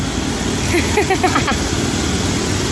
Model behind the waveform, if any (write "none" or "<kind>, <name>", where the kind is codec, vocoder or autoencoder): none